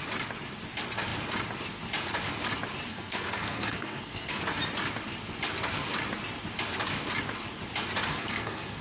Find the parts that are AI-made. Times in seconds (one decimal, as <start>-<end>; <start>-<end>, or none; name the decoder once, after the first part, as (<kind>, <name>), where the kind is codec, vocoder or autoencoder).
2.9-4.4 (codec, SNAC); 8.1-8.8